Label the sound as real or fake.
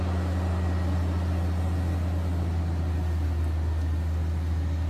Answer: real